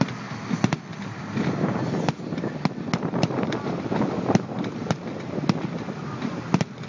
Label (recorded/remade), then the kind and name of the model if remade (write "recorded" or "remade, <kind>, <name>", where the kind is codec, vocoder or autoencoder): recorded